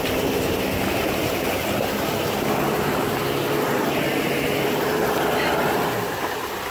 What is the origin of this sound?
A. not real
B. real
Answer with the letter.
B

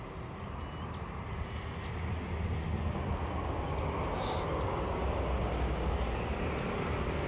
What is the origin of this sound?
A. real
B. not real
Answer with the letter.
A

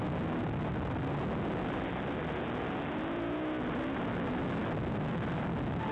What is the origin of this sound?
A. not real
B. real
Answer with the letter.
B